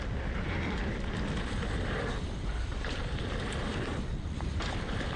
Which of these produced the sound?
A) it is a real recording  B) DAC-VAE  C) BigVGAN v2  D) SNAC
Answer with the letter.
C